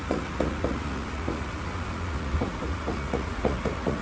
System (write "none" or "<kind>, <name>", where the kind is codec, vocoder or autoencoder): vocoder, Vocos